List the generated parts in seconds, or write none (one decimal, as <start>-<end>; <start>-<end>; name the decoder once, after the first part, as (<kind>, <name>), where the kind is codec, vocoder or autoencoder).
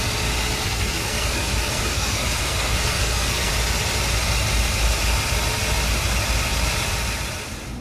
0.6-3.5 (codec, SNAC)